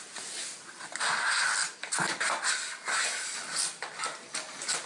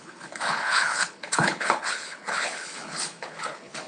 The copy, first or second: second